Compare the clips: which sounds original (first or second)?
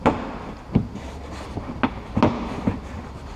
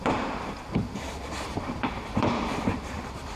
first